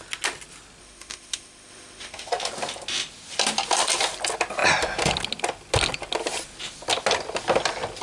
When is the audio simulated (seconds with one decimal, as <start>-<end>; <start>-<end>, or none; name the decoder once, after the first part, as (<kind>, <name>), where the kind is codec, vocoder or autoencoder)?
0.8-2.3 (autoencoder, DAC-VAE)